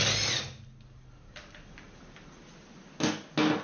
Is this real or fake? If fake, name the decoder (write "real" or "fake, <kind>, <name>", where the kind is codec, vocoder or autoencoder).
real